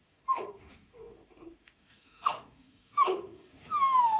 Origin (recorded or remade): remade